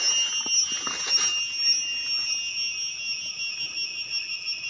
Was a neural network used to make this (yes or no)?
no